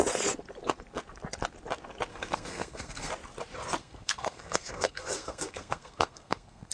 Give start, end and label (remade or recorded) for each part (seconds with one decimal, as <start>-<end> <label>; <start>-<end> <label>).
0.0-2.1 recorded; 2.1-3.1 remade; 3.1-3.8 recorded; 3.8-6.7 remade